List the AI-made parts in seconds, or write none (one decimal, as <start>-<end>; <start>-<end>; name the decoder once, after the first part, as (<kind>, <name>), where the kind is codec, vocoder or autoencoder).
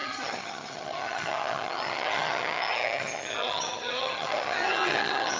0.0-5.4 (vocoder, HiFi-GAN)